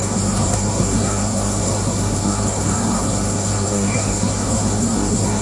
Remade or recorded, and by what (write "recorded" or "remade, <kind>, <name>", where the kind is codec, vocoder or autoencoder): remade, codec, SNAC